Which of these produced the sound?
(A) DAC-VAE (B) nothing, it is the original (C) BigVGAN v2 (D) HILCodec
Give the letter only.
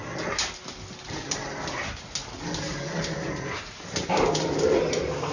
B